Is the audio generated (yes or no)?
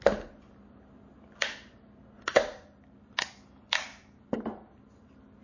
no